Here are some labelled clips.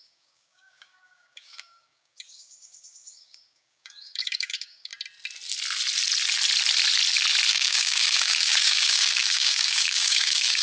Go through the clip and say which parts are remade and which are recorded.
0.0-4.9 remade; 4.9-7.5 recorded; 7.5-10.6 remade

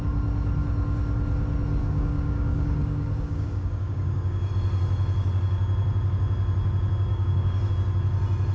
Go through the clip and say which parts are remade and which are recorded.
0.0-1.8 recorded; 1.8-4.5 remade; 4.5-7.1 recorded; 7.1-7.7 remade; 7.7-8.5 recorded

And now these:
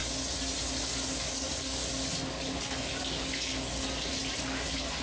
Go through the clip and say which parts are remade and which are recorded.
0.0-1.2 recorded; 1.2-1.8 remade; 1.8-2.3 recorded; 2.3-3.5 remade; 3.5-4.3 recorded; 4.3-5.0 remade

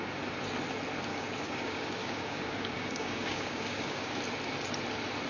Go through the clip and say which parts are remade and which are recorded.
0.0-1.1 recorded; 1.1-4.2 remade; 4.2-5.3 recorded